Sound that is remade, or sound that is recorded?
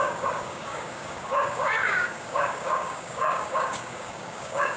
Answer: remade